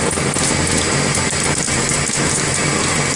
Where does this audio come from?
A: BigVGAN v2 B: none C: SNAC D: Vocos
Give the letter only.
B